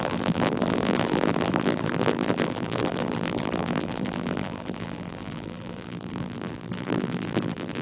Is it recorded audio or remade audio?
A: remade